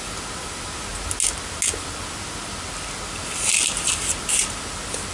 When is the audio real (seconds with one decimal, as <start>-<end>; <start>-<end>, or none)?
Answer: 0.0-5.1